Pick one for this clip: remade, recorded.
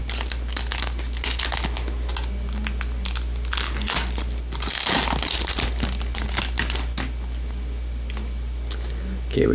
recorded